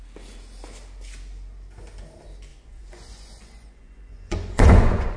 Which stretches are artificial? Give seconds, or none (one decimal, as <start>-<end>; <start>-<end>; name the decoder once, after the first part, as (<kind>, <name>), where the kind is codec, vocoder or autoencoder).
2.5-5.2 (vocoder, Vocos)

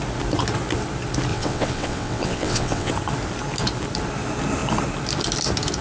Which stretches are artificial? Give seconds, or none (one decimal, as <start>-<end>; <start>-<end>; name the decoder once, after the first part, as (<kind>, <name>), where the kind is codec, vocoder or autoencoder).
1.3-2.9 (vocoder, WaveNeXt)